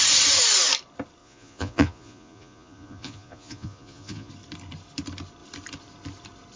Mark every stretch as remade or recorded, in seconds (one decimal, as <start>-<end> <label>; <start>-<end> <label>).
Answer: 0.0-1.2 recorded; 1.2-4.3 remade; 4.3-6.6 recorded